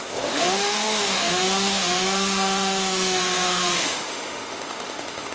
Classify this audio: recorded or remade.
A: remade